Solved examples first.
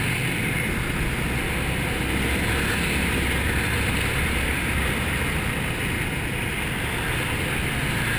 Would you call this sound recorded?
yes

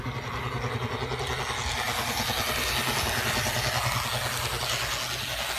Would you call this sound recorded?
yes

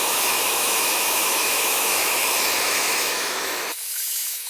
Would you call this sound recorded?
no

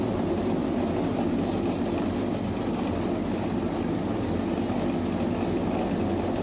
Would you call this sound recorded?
yes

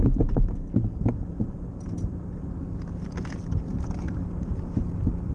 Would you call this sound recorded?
yes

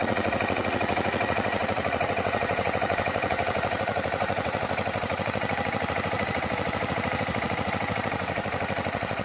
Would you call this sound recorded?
no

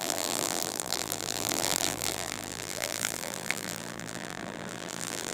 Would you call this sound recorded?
no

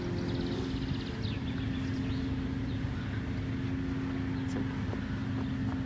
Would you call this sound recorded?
yes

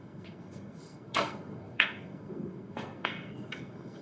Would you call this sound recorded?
no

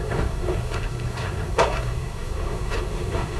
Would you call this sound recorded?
no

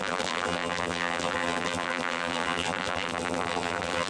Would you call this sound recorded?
no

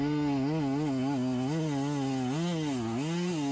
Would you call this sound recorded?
yes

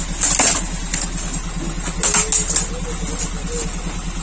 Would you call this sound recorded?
yes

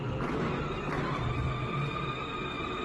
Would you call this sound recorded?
yes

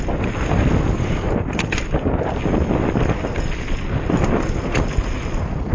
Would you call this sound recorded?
yes